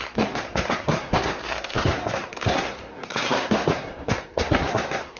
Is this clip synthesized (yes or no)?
yes